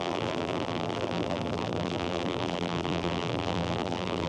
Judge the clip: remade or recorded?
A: remade